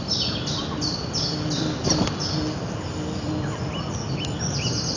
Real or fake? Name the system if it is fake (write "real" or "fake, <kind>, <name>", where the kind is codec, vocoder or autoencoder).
real